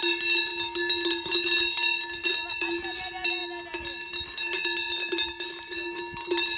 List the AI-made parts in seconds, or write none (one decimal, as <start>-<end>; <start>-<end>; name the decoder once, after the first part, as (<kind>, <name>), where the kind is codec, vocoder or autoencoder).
none